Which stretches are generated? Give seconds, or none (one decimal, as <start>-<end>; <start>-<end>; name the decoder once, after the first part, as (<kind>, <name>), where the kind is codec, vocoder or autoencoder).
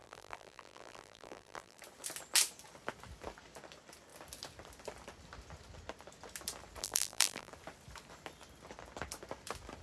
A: 0.0-1.8 (vocoder, BigVGAN v2); 6.8-7.5